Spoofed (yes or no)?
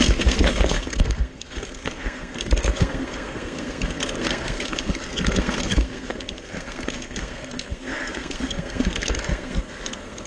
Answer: yes